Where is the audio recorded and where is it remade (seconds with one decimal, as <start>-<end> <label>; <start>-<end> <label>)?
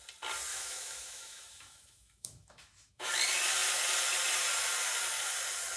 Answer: 0.0-0.5 recorded; 0.5-3.1 remade; 3.1-5.8 recorded